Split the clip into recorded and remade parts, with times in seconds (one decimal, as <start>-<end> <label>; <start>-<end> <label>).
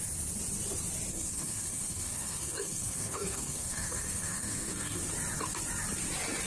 0.0-1.1 recorded; 1.1-5.0 remade; 5.0-6.5 recorded